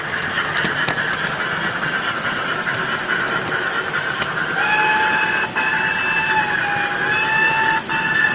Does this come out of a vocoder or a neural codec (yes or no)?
no